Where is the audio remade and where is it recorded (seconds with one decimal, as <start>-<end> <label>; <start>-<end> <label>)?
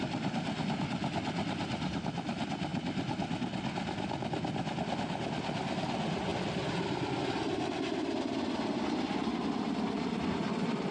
0.0-10.9 recorded